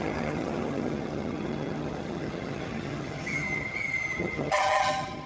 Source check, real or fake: fake